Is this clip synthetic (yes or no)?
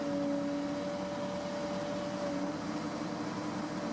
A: no